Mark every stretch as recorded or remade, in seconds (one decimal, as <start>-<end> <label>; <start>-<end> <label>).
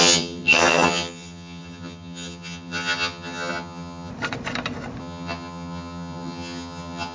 0.0-4.1 remade; 4.1-5.0 recorded; 5.0-7.1 remade